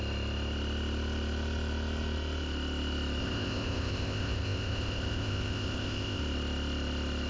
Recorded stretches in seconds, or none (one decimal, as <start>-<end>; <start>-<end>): 0.0-3.2; 6.2-7.3